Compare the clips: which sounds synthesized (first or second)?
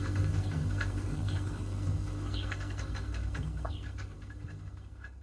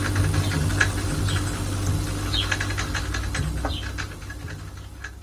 first